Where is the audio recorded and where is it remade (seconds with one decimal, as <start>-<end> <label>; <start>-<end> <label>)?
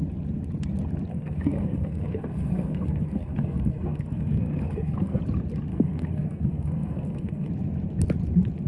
0.0-1.1 recorded; 1.1-5.2 remade; 5.2-5.7 recorded; 5.7-7.5 remade; 7.5-8.7 recorded